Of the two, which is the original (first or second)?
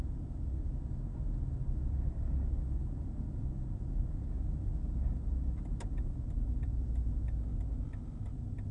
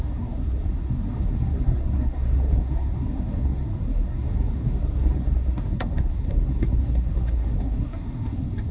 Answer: first